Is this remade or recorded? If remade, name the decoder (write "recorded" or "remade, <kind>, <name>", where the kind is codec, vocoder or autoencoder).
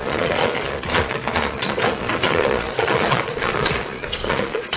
remade, vocoder, Vocos